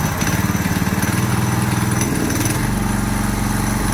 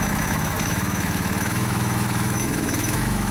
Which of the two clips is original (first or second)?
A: first